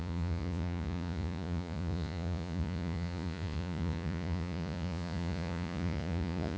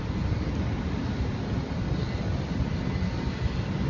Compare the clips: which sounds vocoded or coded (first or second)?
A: first